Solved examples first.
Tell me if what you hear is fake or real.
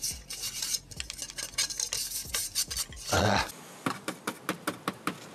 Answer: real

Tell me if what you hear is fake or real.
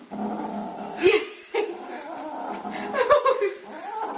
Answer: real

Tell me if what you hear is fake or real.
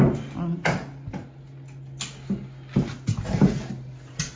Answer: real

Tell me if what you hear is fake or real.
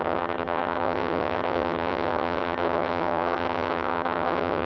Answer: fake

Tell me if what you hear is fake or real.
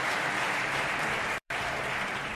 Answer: fake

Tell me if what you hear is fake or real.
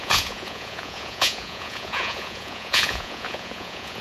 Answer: fake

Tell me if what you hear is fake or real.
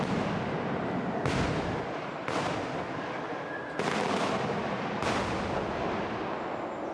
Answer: real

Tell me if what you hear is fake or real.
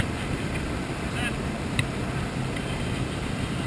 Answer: fake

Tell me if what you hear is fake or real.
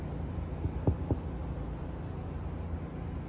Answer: real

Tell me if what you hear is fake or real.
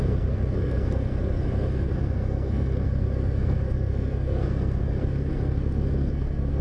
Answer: fake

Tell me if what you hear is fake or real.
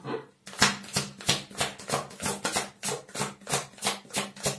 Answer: real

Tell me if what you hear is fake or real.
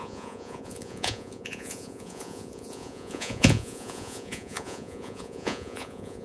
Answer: fake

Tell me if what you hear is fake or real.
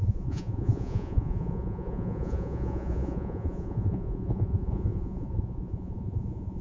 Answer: fake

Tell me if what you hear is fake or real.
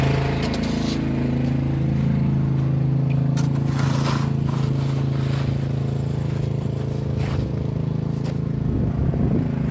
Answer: real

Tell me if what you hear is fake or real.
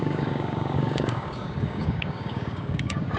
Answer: fake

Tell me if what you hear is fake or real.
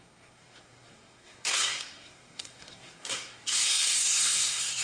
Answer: fake